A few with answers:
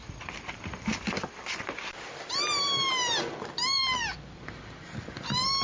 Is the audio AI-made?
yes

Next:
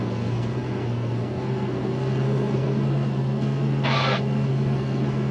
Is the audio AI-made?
yes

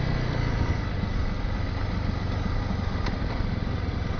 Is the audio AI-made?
no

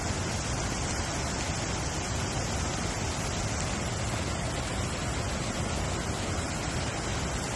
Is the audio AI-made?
no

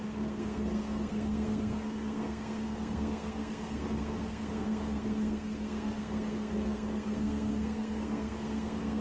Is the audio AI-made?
yes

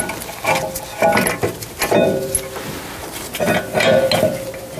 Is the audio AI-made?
no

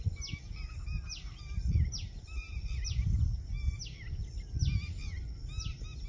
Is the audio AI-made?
no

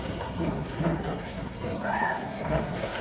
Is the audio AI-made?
yes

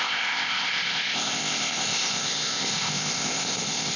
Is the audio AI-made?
yes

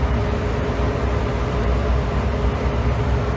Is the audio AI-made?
no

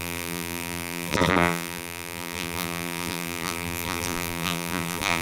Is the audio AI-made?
yes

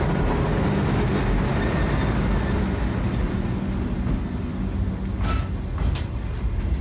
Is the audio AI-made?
no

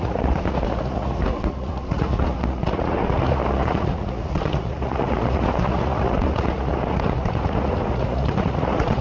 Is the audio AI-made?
yes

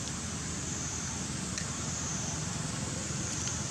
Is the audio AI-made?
no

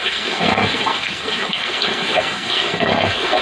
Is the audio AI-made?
yes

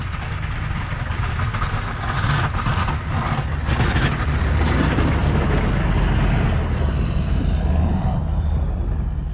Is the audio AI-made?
no